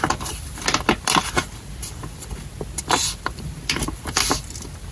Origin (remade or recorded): recorded